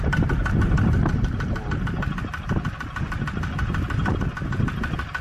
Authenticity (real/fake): real